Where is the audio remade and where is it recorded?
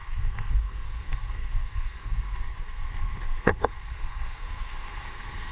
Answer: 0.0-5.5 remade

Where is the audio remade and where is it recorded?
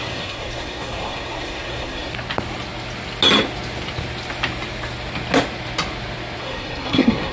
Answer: 0.0-2.1 remade; 2.1-6.4 recorded; 6.4-7.3 remade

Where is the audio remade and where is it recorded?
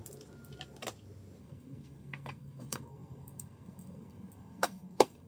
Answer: 0.0-1.4 recorded; 1.4-5.3 remade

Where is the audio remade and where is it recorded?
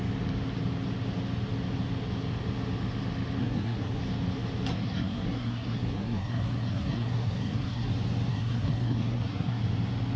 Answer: 0.0-3.4 recorded; 3.4-4.0 remade; 4.0-4.7 recorded; 4.7-7.9 remade; 7.9-8.3 recorded; 8.3-9.6 remade; 9.6-10.2 recorded